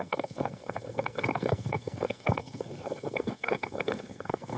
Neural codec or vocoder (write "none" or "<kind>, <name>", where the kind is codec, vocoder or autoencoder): codec, SNAC